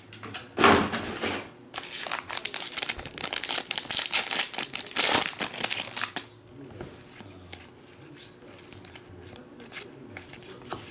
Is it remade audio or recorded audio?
recorded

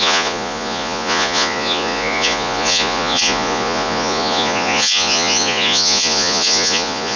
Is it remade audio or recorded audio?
remade